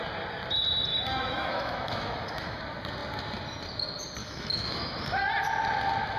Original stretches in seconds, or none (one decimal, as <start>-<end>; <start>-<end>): 0.0-0.9; 2.6-4.2; 5.0-6.2